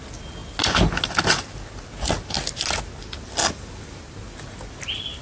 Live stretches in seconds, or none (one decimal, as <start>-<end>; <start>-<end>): 0.0-5.2